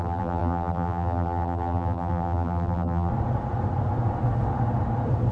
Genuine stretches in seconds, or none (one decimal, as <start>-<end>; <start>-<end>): 3.1-5.3